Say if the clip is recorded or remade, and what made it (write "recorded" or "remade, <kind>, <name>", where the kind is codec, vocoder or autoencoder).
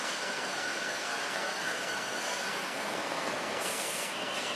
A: remade, codec, SNAC